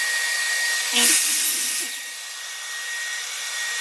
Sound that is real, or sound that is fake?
real